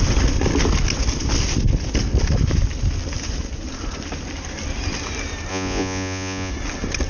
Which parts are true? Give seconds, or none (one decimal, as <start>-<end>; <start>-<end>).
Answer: 0.0-5.5; 6.5-7.1